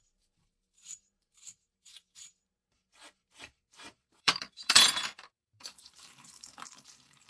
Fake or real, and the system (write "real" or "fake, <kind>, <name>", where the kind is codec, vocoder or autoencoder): fake, vocoder, BigVGAN v2